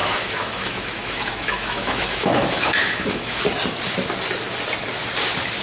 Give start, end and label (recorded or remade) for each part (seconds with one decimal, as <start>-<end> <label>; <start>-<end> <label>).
0.0-3.4 remade; 3.4-5.6 recorded